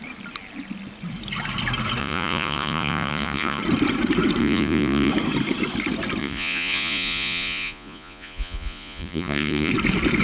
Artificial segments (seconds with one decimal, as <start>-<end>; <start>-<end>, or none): 2.0-3.6; 4.4-5.1; 6.2-9.7